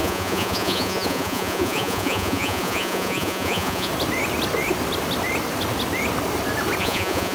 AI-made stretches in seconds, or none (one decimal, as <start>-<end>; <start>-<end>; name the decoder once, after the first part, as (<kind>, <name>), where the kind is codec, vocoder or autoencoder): 0.0-3.9 (vocoder, Vocos); 6.8-7.3